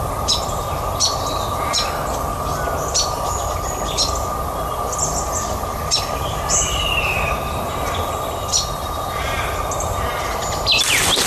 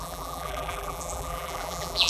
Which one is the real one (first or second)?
first